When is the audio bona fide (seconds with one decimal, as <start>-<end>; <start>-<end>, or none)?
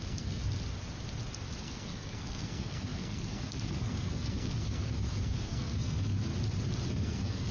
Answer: 0.4-1.6; 6.3-6.9